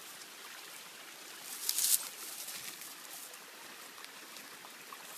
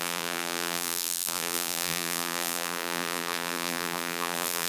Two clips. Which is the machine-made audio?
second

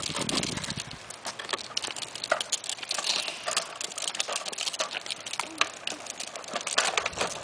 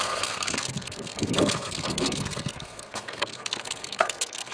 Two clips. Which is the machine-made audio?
second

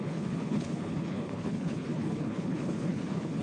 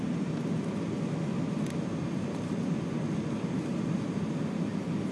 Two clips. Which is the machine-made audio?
first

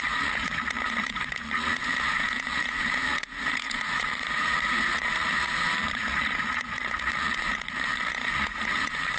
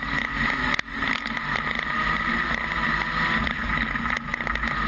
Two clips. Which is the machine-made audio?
first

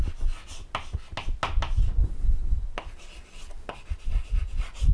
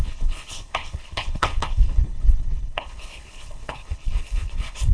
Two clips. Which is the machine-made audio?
second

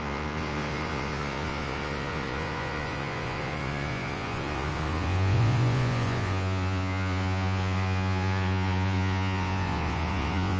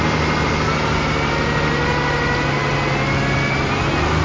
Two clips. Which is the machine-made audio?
first